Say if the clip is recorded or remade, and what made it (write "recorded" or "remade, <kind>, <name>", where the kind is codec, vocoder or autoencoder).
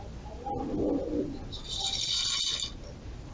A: recorded